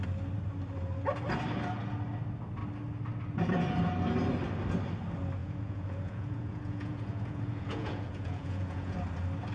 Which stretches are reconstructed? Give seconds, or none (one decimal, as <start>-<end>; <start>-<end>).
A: 5.4-9.0